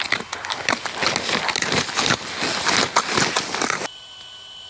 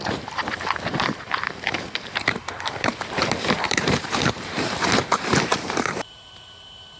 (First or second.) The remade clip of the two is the second